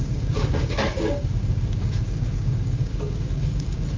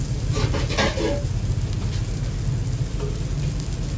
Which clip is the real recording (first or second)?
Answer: second